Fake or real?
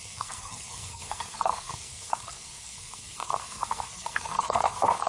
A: fake